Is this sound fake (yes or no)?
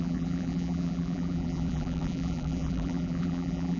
yes